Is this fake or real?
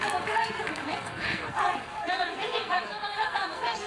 fake